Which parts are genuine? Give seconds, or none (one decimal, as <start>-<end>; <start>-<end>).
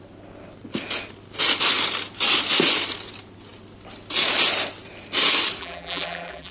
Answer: 0.0-5.6